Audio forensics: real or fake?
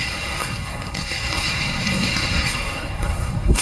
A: fake